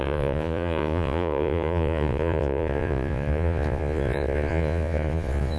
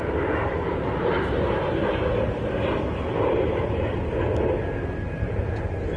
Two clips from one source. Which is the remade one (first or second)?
first